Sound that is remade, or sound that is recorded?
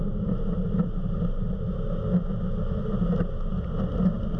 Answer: recorded